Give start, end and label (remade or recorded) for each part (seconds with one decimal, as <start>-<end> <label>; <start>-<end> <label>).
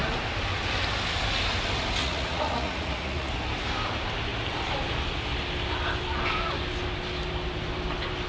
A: 0.0-2.0 recorded; 2.0-3.3 remade; 3.3-8.3 recorded